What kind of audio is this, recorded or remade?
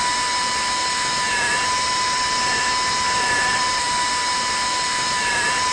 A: remade